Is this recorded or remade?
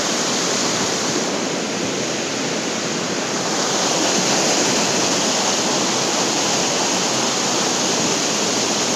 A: recorded